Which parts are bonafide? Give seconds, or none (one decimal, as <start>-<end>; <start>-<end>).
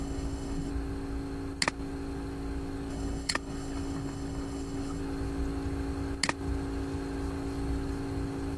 0.7-2.9; 5.0-8.6